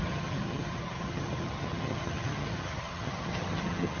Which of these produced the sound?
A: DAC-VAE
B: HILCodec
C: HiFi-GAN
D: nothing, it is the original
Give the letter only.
C